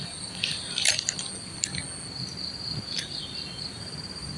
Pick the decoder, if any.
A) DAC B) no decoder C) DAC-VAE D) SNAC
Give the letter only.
B